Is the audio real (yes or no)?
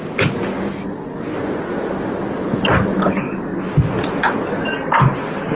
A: yes